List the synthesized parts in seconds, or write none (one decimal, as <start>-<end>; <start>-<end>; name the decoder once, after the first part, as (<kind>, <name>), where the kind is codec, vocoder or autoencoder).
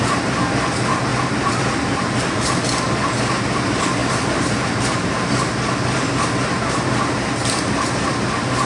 0.0-8.7 (vocoder, BigVGAN v2)